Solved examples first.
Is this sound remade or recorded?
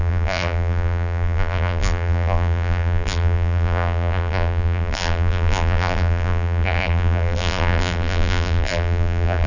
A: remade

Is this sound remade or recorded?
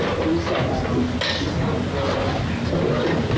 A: recorded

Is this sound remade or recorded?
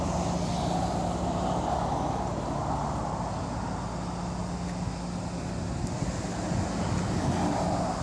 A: recorded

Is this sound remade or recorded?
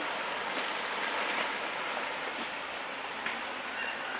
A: remade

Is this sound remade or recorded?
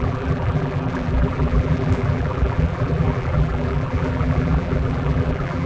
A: remade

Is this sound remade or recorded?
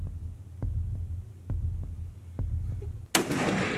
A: recorded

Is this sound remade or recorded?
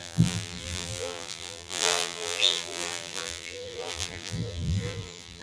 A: remade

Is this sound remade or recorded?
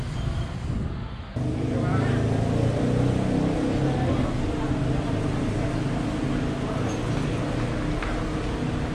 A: recorded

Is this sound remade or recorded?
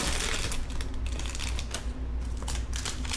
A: recorded